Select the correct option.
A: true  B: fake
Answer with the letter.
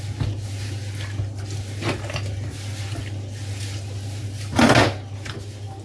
A